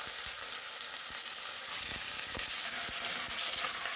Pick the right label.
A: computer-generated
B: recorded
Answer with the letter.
B